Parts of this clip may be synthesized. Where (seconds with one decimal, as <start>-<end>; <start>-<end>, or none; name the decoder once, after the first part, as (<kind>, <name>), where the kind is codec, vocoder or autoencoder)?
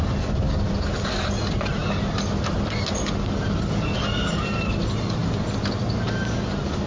none